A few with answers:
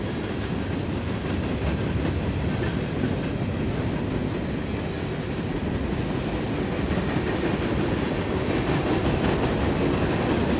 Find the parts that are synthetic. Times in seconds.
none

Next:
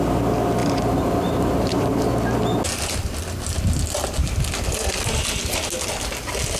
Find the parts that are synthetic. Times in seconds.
0.6-2.0 (vocoder, BigVGAN v2)

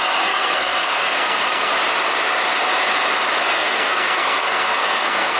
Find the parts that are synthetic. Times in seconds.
0.0-1.7 (codec, SNAC); 3.4-5.4

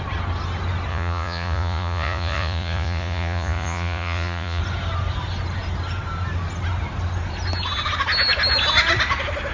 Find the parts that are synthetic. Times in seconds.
0.9-4.6 (vocoder, Vocos)

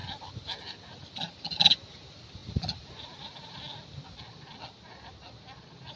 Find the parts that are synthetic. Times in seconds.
none

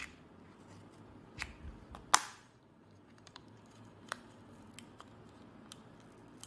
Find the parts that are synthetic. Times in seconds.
2.4-4.7 (vocoder, BigVGAN v2)

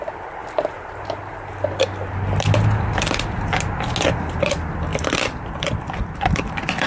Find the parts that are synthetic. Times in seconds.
0.0-0.4 (vocoder, BigVGAN v2); 4.0-6.9

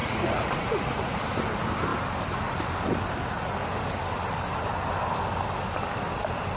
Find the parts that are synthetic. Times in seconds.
0.0-1.2 (vocoder, Vocos)